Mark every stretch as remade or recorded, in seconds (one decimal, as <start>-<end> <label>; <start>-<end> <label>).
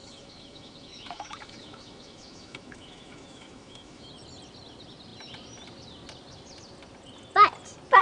0.0-4.1 remade; 4.1-8.0 recorded